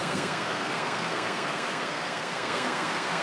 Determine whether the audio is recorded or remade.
remade